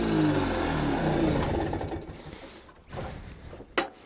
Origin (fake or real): real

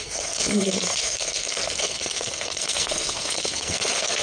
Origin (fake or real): fake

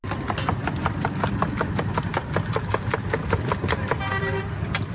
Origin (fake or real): real